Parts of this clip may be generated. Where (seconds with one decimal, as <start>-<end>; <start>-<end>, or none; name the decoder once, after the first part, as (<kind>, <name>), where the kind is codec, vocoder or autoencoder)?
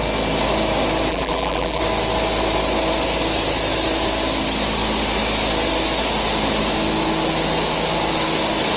1.1-1.8 (vocoder, BigVGAN v2)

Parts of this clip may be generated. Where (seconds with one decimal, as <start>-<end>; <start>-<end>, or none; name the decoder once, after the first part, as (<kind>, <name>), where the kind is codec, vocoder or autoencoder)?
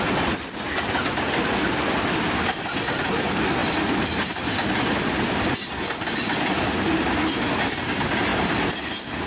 0.0-9.3 (vocoder, BigVGAN v2)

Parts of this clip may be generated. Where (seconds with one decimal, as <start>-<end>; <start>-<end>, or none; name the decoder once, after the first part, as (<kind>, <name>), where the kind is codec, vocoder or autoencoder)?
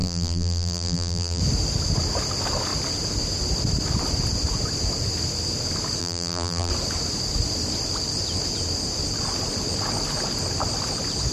0.0-1.4 (vocoder, BigVGAN v2); 6.0-6.7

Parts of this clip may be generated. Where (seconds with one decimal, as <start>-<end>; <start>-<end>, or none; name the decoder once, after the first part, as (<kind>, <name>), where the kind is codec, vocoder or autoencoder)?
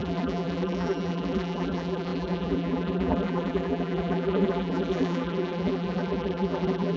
0.0-7.0 (vocoder, BigVGAN v2)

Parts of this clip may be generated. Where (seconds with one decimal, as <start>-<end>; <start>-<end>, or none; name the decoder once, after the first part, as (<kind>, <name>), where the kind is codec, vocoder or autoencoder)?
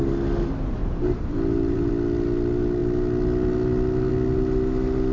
0.8-1.9 (vocoder, BigVGAN v2)